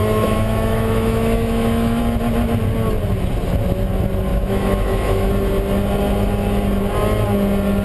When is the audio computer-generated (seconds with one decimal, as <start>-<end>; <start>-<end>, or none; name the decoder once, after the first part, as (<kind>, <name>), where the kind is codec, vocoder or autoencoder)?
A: 0.0-2.0 (autoencoder, DAC-VAE); 4.3-5.3